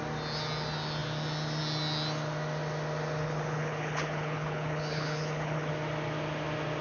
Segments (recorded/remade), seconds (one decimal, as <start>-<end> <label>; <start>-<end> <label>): 0.0-3.2 recorded; 3.2-5.7 remade; 5.7-6.8 recorded